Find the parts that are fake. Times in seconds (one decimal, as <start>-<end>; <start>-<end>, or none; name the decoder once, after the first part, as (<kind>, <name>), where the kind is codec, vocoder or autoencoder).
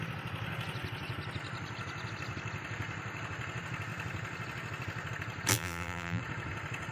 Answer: 5.5-6.2 (vocoder, BigVGAN v2)